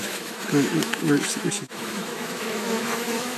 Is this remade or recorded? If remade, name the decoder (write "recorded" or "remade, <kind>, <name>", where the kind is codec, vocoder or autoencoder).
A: remade, autoencoder, DAC-VAE